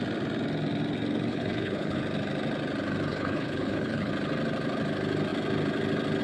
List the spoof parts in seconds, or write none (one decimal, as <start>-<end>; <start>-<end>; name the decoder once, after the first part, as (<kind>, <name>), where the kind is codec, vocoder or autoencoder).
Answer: 1.3-2.0 (codec, HILCodec); 3.1-4.1